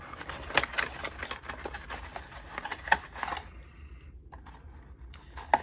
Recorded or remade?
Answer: recorded